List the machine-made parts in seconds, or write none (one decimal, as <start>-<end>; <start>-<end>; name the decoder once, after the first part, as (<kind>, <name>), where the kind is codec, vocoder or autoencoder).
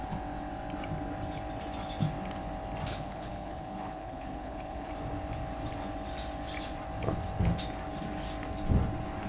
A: 2.9-4.9 (codec, HILCodec)